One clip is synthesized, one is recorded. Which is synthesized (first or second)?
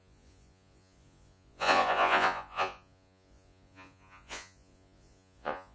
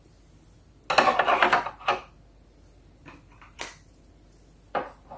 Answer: first